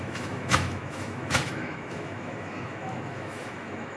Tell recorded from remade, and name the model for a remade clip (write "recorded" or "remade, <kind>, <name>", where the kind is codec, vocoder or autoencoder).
remade, autoencoder, DAC-VAE